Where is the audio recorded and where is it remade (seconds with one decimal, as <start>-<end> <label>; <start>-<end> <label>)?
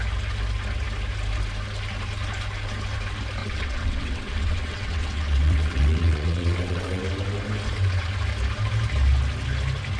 0.0-3.4 recorded; 3.4-7.0 remade; 7.0-10.0 recorded